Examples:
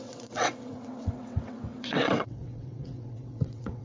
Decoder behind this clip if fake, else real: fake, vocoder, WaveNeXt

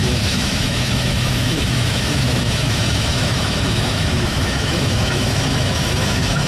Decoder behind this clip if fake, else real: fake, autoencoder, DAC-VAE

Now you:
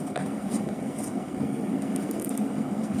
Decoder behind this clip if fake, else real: fake, codec, SNAC